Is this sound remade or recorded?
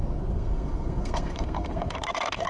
remade